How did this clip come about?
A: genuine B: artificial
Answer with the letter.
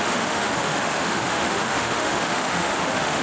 B